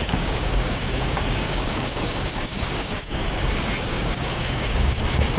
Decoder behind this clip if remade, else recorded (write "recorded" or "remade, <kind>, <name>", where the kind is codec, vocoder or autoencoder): remade, codec, DAC